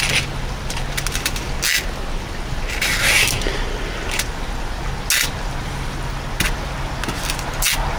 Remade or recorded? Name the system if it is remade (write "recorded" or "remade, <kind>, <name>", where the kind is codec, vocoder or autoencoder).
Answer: recorded